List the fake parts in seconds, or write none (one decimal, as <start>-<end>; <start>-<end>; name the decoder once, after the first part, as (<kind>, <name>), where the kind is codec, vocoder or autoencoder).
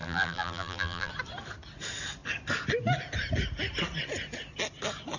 0.0-1.1 (vocoder, BigVGAN v2)